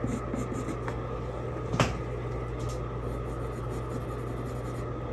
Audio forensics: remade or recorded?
recorded